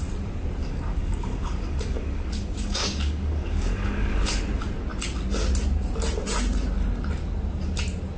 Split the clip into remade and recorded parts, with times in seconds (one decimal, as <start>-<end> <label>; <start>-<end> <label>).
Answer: 0.0-0.6 recorded; 0.6-4.4 remade; 4.4-8.2 recorded